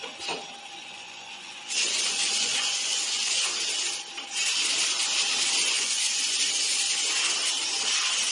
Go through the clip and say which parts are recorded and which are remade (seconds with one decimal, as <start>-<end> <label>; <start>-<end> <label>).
0.0-0.8 recorded; 0.8-3.4 remade; 3.4-5.6 recorded; 5.6-6.4 remade; 6.4-8.3 recorded